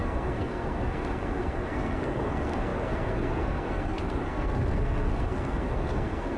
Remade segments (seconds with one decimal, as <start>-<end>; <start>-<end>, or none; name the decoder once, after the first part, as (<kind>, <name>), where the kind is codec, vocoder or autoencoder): 0.0-6.4 (codec, SNAC)